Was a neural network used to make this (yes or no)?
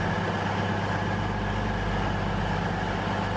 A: no